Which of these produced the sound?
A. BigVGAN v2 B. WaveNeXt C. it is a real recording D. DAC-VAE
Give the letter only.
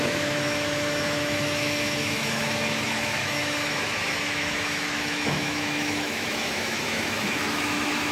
D